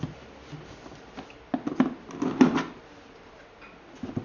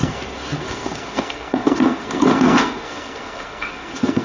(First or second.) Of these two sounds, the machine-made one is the second